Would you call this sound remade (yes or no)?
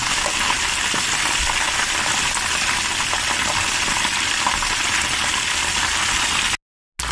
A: no